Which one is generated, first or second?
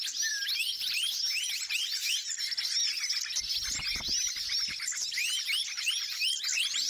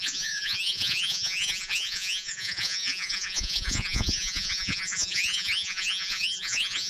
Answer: second